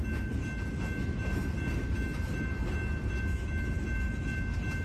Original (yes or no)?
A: yes